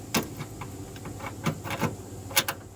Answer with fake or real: real